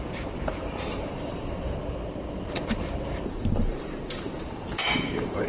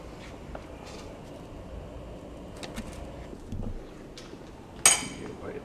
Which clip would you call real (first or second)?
second